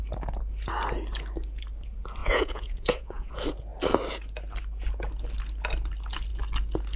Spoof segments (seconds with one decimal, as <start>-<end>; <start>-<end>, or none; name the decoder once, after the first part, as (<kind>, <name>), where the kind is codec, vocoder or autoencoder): 2.2-3.3 (vocoder, Vocos)